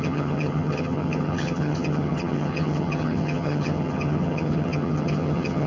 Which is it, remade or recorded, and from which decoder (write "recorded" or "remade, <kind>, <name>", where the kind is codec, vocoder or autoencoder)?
remade, vocoder, HiFi-GAN